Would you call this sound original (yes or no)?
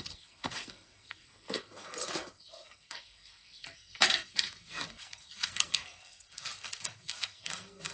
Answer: no